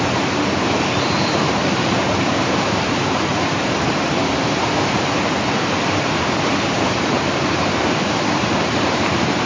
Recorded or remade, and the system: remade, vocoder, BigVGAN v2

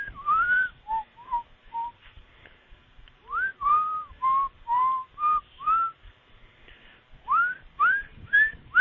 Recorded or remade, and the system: remade, vocoder, BigVGAN v2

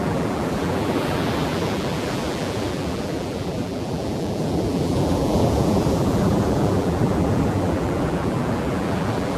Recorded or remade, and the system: remade, vocoder, BigVGAN v2